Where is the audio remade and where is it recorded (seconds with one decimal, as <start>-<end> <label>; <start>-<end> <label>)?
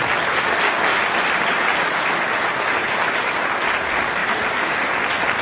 0.0-0.9 recorded; 0.9-3.4 remade; 3.4-4.2 recorded; 4.2-4.9 remade; 4.9-5.4 recorded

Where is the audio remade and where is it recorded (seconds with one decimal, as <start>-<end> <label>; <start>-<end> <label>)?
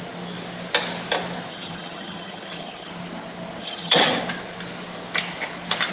0.0-1.5 recorded; 1.5-2.9 remade; 2.9-3.6 recorded; 3.6-4.1 remade; 4.1-5.9 recorded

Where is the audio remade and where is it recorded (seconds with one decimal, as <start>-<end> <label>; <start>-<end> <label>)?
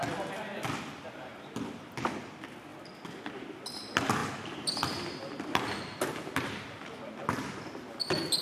0.0-8.4 recorded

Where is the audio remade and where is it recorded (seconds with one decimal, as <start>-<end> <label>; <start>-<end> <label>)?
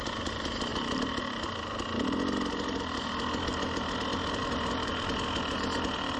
0.0-6.2 recorded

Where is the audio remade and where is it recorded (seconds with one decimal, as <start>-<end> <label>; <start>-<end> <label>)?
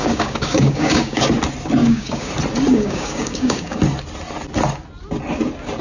0.0-1.2 remade; 1.2-1.8 recorded; 1.8-2.3 remade; 2.3-2.7 recorded; 2.7-3.8 remade; 3.8-5.8 recorded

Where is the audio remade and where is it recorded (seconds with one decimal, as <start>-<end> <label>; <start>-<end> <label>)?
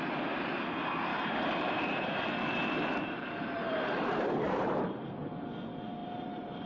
0.0-1.1 recorded; 1.1-5.1 remade; 5.1-6.0 recorded; 6.0-6.7 remade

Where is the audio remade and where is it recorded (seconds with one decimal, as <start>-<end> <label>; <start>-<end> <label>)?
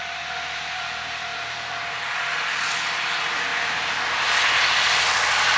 0.0-5.6 recorded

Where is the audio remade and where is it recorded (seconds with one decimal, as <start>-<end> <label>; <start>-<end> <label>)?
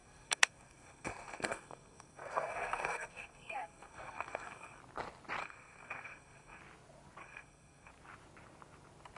0.0-4.8 remade; 4.8-5.4 recorded; 5.4-6.6 remade; 6.6-7.2 recorded; 7.2-7.9 remade; 7.9-9.2 recorded